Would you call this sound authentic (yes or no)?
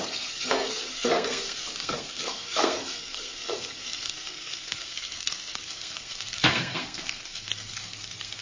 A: no